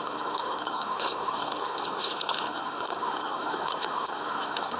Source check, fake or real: fake